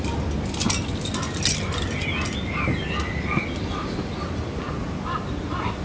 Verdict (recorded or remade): recorded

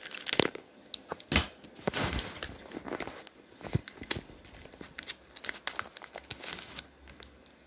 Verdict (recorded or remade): recorded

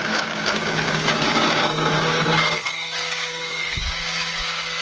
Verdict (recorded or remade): remade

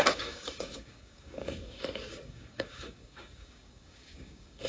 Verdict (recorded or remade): remade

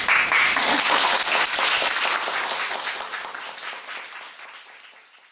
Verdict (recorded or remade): recorded